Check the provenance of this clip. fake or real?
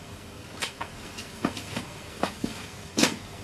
fake